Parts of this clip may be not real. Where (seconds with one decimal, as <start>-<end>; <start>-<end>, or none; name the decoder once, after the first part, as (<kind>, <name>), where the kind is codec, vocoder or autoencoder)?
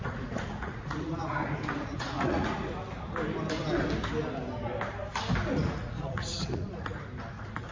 0.0-2.7 (vocoder, Vocos); 5.5-7.0